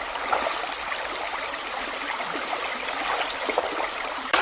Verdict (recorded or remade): recorded